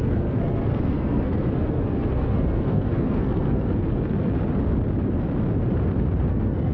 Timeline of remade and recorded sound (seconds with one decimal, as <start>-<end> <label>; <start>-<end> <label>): 0.0-4.4 remade; 4.4-6.3 recorded; 6.3-6.7 remade